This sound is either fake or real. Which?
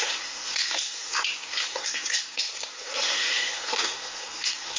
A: fake